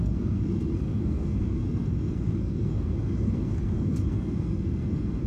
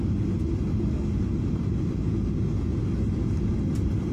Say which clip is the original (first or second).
second